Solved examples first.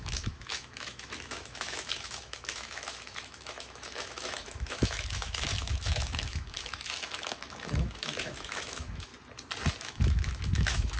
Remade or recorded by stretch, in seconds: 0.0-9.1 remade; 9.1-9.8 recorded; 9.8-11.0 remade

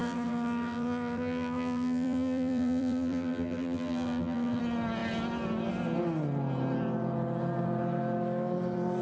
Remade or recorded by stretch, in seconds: 0.0-4.6 remade; 4.6-9.0 recorded

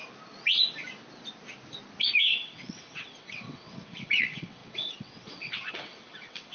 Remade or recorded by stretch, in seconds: 0.0-2.2 recorded; 2.2-6.5 remade

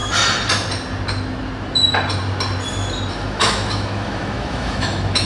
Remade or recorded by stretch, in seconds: 0.0-3.1 recorded; 3.1-5.2 remade

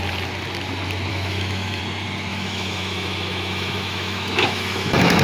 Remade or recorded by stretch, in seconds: 0.0-1.1 recorded; 1.1-1.8 remade; 1.8-2.3 recorded; 2.3-5.2 remade

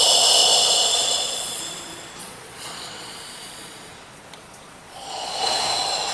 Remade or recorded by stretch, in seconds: 0.0-0.4 recorded; 0.4-1.6 remade; 1.6-2.2 recorded; 2.2-6.1 remade

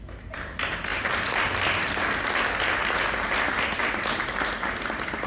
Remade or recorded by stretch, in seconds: 0.0-5.3 recorded